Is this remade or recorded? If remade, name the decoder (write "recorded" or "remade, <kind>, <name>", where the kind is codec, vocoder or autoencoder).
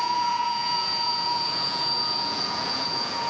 remade, vocoder, Vocos